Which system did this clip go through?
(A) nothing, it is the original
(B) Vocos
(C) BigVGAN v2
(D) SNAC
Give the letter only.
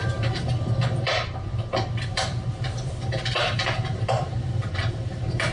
C